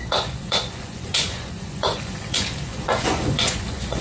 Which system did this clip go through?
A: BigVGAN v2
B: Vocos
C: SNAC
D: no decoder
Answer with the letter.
B